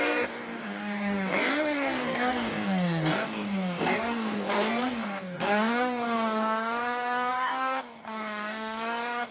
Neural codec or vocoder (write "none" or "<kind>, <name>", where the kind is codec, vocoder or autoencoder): codec, DAC